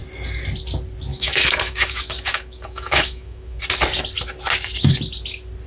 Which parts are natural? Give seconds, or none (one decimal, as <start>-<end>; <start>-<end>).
0.0-1.1; 3.6-5.7